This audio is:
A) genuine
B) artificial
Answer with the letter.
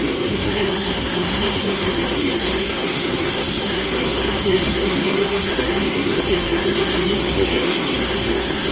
B